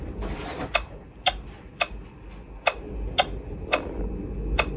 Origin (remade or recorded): recorded